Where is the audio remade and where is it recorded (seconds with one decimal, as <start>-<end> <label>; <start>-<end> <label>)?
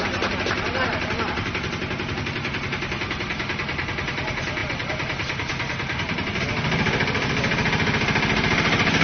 0.0-9.0 recorded